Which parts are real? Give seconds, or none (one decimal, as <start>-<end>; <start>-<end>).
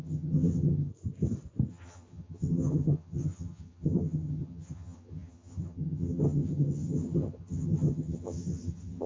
0.9-1.7